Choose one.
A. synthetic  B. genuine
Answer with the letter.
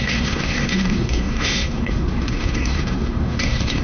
A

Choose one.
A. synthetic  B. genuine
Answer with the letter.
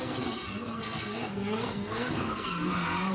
A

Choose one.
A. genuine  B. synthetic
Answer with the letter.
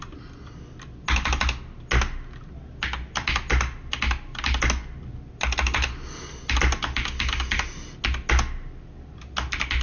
A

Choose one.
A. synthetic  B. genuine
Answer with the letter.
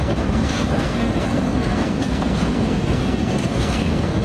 A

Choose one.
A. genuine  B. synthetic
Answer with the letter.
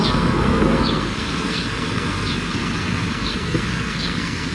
B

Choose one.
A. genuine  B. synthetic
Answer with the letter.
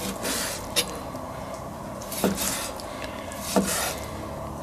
A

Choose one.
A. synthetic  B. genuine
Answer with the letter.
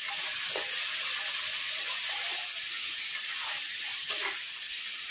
B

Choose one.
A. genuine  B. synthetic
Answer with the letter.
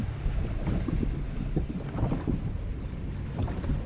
A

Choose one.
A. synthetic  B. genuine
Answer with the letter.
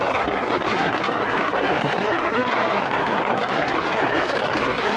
A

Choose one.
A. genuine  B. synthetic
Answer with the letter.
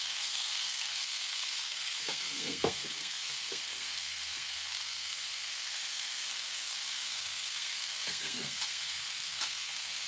B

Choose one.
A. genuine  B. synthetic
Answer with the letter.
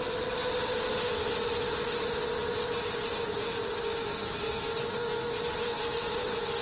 A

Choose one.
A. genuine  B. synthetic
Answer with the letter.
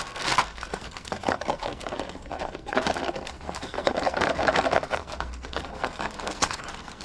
B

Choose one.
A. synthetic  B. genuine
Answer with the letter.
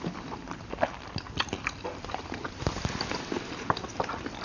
B